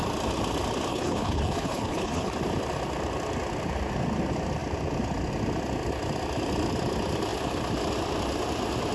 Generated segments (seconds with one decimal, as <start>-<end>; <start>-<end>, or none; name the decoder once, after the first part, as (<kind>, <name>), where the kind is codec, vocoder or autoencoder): 0.9-2.3 (codec, HILCodec)